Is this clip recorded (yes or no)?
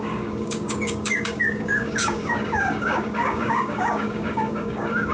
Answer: no